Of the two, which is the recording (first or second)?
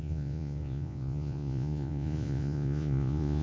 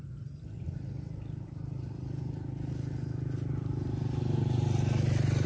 second